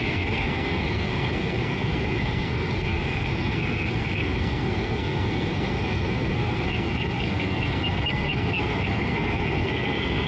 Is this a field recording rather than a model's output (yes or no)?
no